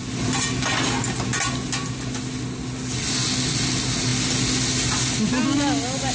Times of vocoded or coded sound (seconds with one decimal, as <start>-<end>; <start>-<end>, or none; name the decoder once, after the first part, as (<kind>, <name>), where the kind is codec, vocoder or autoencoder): none